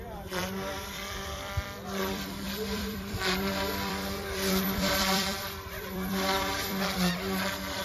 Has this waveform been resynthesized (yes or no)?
yes